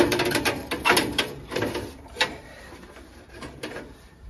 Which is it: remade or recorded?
remade